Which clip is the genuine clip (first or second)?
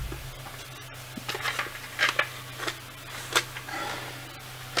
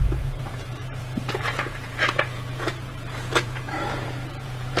first